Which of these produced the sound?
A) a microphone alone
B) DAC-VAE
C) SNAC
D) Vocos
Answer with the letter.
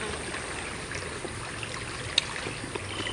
A